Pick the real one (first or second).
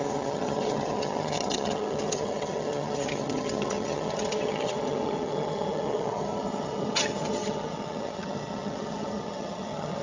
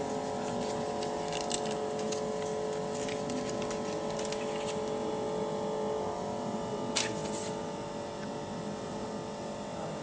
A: second